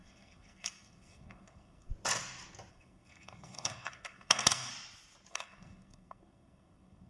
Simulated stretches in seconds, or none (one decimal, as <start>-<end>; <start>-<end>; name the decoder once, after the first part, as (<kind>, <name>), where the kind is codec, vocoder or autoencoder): 0.0-1.9 (codec, SNAC); 2.7-4.7; 5.3-7.1